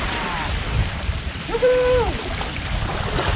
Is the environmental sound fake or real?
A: fake